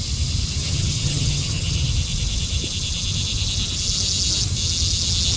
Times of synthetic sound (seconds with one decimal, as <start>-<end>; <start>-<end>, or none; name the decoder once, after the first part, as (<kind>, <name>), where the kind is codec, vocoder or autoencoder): 0.6-1.9 (vocoder, HiFi-GAN)